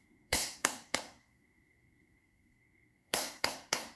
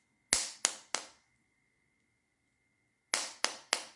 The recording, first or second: second